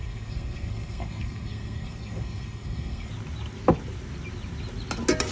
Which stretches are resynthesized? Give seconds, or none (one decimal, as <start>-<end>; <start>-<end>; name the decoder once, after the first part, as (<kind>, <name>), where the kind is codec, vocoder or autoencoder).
0.0-3.1 (codec, SNAC)